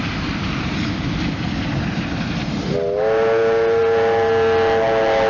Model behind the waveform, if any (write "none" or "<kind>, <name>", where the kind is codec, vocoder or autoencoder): none